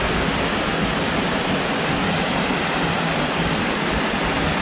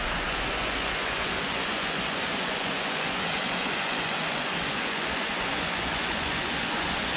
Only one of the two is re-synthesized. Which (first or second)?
second